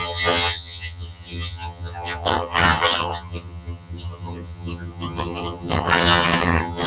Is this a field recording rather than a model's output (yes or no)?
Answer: no